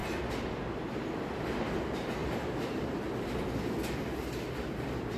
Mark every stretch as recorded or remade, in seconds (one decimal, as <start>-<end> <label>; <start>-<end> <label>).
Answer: 0.0-2.2 recorded; 2.2-3.0 remade; 3.0-5.2 recorded